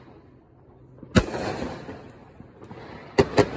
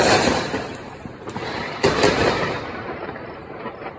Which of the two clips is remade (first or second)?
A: second